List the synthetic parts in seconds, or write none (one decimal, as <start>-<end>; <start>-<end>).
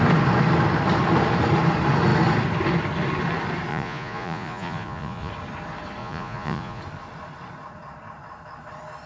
3.7-5.3; 6.0-6.8